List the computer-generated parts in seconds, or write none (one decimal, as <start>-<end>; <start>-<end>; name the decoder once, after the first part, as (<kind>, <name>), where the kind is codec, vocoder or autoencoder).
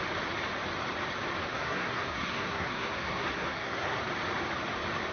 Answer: 1.5-4.0 (codec, SNAC)